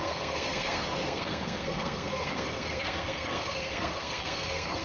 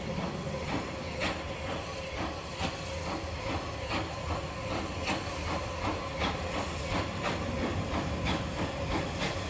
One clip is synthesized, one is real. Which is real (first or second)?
second